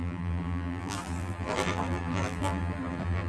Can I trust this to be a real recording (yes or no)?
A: no